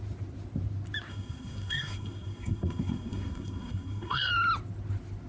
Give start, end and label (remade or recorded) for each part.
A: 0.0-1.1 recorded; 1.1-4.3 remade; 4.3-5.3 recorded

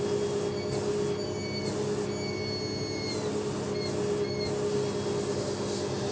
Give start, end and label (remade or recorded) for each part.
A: 0.0-6.1 recorded

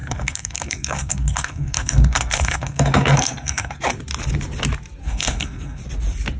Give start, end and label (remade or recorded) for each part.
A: 0.0-3.8 remade; 3.8-5.0 recorded; 5.0-5.8 remade; 5.8-6.4 recorded